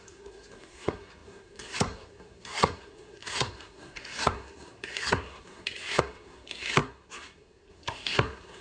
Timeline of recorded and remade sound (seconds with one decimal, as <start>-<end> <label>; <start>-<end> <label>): 0.0-8.6 remade